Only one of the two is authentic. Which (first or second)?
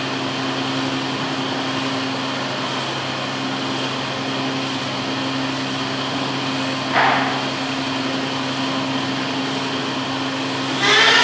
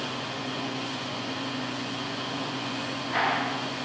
first